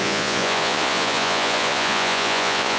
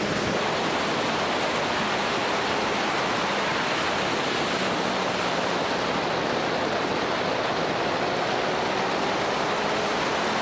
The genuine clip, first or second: second